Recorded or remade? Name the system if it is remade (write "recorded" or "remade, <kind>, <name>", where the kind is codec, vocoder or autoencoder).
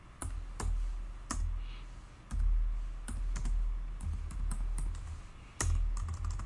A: recorded